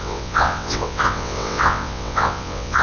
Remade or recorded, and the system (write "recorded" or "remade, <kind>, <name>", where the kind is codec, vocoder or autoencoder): remade, vocoder, WaveNeXt